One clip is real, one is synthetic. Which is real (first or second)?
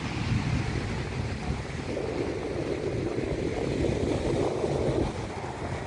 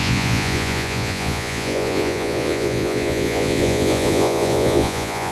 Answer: first